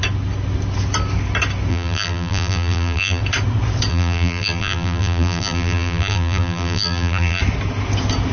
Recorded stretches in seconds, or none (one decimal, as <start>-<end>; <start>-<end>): 0.0-1.7; 3.2-3.9; 7.4-8.3